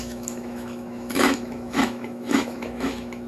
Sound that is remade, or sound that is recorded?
remade